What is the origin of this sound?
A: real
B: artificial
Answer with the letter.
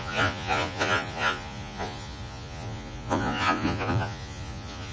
B